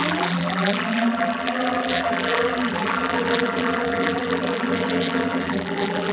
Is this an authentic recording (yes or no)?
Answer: no